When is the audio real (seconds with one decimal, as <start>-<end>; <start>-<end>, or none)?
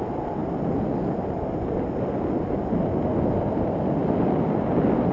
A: 0.0-5.1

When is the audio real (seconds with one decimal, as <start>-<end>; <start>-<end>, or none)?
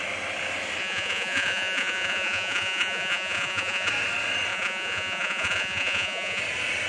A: 0.0-0.8; 3.9-4.5; 6.4-6.9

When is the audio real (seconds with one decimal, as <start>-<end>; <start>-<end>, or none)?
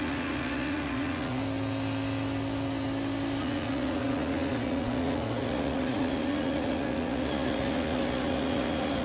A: 1.4-3.4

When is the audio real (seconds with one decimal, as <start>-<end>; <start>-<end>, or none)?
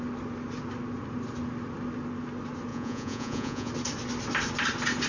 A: 0.0-2.7; 3.7-5.1